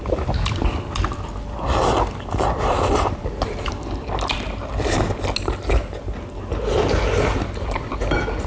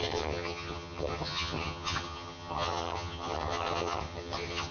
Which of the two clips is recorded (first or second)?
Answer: first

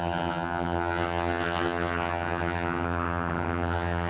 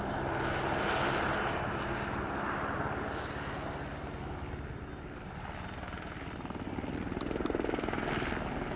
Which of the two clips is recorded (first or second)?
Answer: second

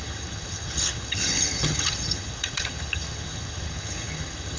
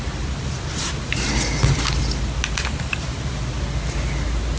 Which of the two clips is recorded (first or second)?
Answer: second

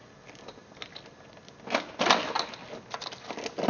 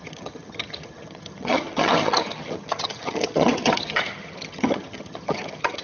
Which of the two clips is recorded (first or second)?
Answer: first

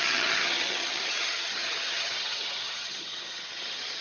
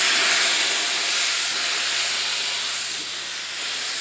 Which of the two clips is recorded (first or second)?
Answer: second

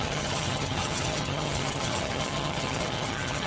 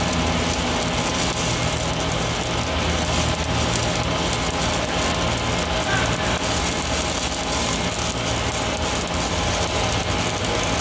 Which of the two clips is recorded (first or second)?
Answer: second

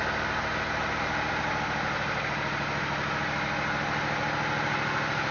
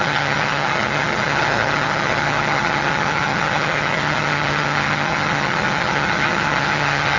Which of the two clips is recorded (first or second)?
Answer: first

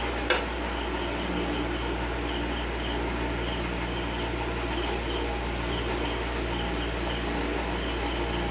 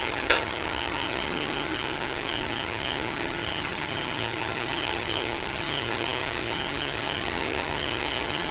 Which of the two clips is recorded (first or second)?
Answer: first